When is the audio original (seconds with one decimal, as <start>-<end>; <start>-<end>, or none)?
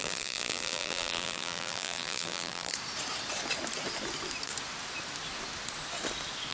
2.7-6.5